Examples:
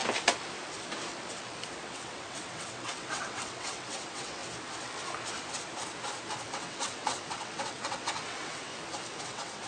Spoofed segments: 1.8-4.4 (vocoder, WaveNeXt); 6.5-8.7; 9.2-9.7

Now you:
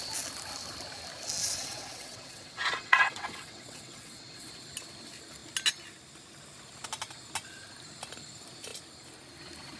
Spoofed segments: 1.4-4.5 (vocoder, WaveNeXt)